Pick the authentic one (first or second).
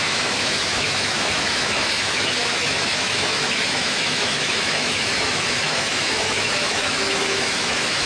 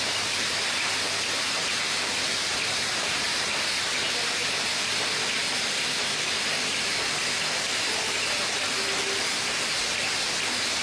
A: second